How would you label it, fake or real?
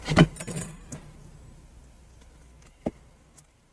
real